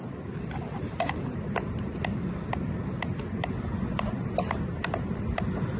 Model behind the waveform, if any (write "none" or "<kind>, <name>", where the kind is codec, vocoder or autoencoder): none